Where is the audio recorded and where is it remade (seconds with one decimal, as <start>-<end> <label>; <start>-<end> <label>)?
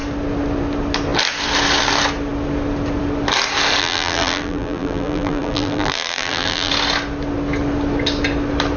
0.0-3.8 recorded; 3.8-6.7 remade; 6.7-8.8 recorded